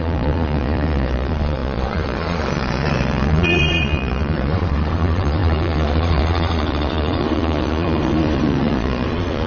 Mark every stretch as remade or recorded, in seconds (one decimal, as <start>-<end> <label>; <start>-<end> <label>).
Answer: 0.0-9.5 remade